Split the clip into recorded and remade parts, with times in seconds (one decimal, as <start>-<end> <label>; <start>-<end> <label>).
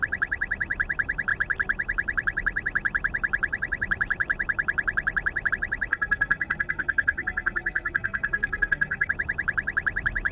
0.0-5.9 recorded; 5.9-9.1 remade; 9.1-10.3 recorded